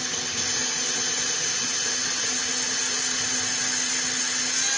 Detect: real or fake real